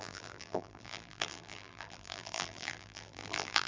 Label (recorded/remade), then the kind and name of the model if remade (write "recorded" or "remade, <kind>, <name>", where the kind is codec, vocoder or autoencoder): remade, vocoder, BigVGAN v2